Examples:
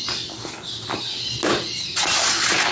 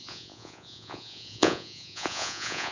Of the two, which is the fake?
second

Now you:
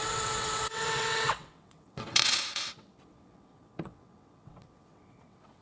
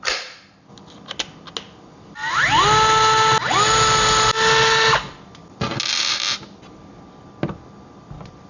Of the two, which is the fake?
first